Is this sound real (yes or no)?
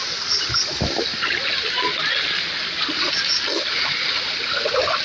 yes